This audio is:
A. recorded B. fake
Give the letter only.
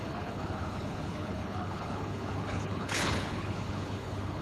B